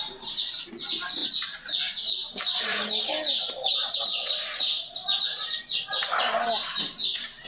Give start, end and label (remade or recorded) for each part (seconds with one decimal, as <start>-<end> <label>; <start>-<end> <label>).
0.0-1.2 recorded; 1.2-3.0 remade; 3.0-7.5 recorded